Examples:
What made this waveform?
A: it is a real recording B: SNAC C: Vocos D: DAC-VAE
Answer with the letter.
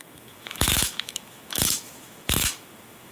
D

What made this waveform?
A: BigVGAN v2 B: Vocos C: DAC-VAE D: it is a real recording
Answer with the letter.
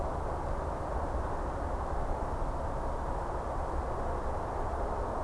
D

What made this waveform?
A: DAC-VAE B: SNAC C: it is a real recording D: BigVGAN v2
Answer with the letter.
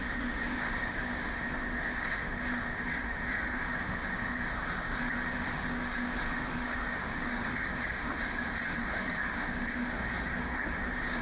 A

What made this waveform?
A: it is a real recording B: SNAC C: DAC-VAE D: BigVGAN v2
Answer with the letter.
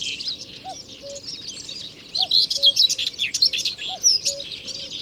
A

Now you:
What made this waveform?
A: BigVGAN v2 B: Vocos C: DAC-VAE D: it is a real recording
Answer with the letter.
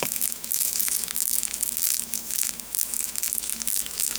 C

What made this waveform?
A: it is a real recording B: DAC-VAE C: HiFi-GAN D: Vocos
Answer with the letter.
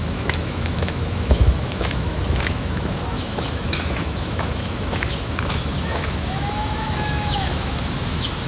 B